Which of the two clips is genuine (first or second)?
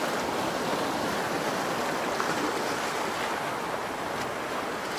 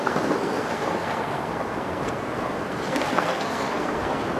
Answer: first